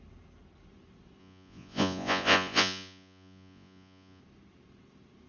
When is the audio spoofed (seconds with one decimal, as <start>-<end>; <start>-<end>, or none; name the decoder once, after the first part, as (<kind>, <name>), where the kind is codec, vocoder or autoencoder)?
1.2-4.2 (vocoder, Vocos)

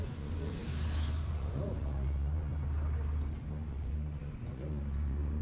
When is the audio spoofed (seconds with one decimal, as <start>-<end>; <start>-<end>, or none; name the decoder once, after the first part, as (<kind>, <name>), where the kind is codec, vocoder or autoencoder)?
0.0-0.6 (vocoder, Vocos); 1.3-2.5; 3.5-5.4